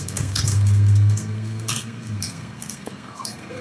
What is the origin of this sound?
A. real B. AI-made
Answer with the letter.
B